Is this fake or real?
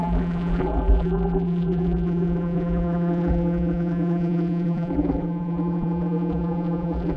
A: fake